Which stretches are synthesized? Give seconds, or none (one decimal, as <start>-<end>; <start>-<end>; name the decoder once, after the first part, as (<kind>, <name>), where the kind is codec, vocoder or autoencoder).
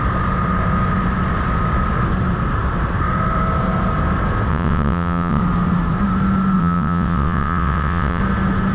4.5-5.4 (vocoder, WaveNeXt); 6.6-8.2